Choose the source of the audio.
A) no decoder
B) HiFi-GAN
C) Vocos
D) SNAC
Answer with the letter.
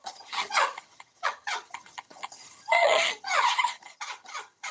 B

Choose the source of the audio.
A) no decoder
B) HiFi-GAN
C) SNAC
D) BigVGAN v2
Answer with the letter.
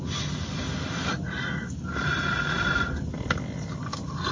A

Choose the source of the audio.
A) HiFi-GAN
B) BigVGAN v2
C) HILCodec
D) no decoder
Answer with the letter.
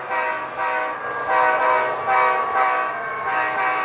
D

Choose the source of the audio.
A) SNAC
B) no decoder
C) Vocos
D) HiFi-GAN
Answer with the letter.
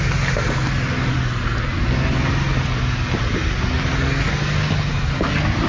B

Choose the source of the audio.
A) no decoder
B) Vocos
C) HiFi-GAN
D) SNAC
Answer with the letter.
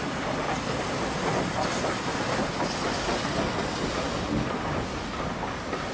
A